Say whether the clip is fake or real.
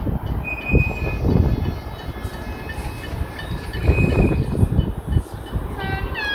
real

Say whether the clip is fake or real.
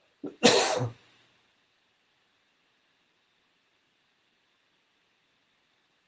fake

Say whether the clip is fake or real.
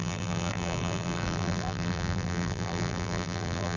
fake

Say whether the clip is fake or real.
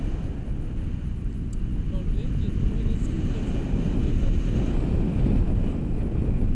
real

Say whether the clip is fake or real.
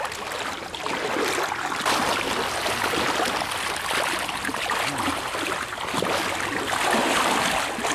real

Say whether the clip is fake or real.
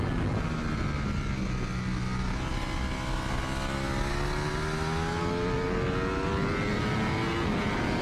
real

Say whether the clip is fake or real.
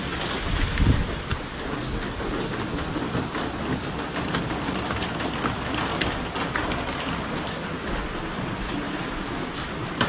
real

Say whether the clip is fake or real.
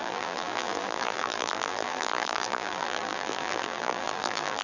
fake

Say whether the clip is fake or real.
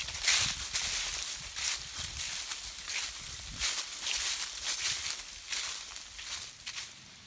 real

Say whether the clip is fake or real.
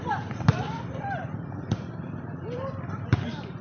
fake